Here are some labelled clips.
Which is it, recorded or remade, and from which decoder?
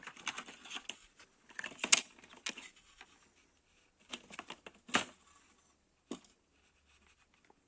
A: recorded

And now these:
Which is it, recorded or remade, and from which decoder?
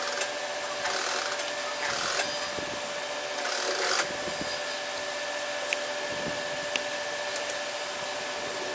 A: recorded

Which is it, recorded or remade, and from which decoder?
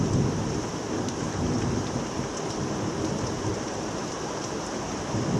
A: remade, vocoder, BigVGAN v2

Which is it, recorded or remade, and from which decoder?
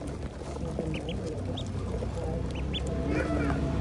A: recorded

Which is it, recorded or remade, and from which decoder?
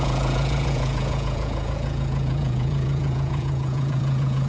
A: remade, vocoder, Vocos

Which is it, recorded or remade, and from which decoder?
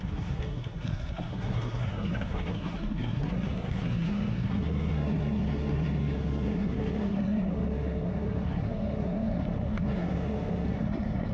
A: remade, codec, SNAC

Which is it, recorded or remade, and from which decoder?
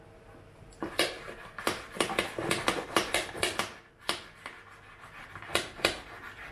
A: recorded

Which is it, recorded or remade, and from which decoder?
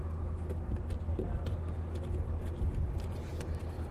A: recorded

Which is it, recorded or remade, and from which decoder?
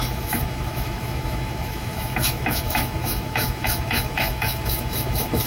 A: remade, autoencoder, DAC-VAE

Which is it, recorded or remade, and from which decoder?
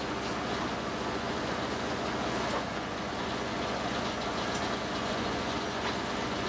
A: remade, vocoder, Vocos